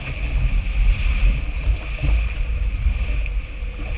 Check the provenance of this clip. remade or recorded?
recorded